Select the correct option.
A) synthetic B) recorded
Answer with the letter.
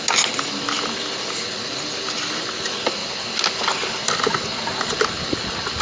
B